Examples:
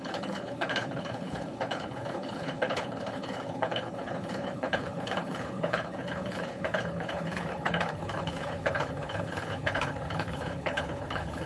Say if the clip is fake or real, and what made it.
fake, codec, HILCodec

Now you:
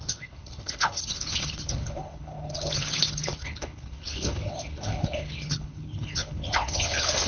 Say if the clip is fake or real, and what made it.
fake, codec, HILCodec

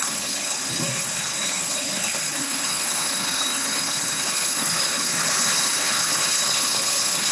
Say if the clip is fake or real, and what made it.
fake, codec, HILCodec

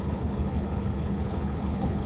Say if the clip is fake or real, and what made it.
fake, codec, HILCodec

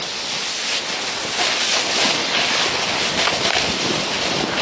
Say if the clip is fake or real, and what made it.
real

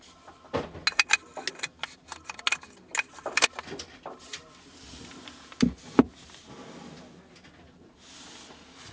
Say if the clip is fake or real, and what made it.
real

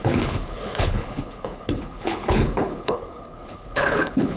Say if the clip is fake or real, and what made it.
fake, codec, HILCodec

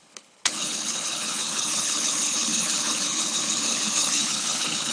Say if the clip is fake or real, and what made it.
fake, codec, HILCodec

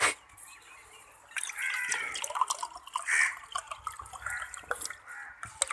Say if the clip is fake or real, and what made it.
real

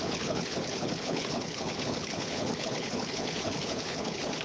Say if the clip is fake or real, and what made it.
fake, codec, HILCodec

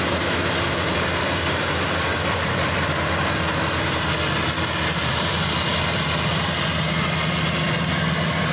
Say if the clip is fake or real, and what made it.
real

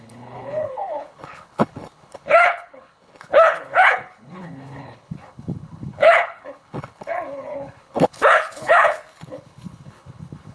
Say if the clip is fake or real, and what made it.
fake, codec, HILCodec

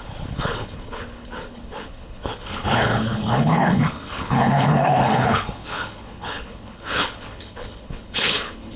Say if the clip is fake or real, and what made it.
fake, codec, HILCodec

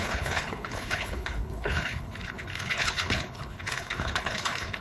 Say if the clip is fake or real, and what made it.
fake, codec, HILCodec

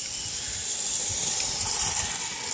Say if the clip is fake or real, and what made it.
real